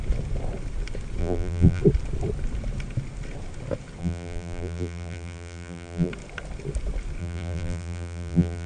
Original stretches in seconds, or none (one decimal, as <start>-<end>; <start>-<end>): 0.0-1.2; 1.8-4.0; 6.1-7.2